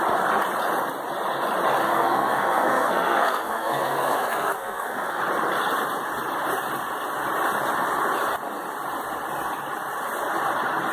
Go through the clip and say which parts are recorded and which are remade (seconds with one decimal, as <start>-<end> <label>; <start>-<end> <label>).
0.0-1.8 recorded; 1.8-5.2 remade; 5.2-10.9 recorded